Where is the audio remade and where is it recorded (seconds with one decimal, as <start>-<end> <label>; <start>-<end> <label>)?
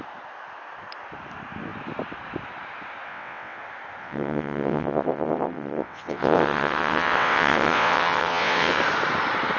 0.0-3.1 recorded; 3.1-3.6 remade; 3.6-4.0 recorded; 4.0-8.8 remade; 8.8-9.6 recorded